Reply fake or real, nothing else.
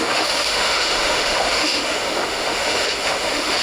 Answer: fake